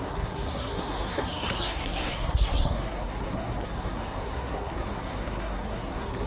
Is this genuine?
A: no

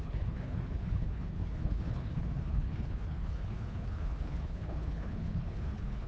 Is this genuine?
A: no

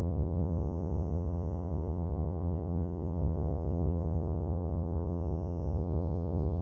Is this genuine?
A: no